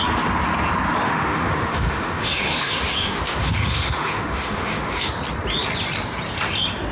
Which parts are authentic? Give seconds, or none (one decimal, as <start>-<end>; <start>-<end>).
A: 0.0-1.0; 5.1-6.9